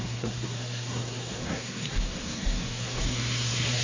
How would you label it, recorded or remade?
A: remade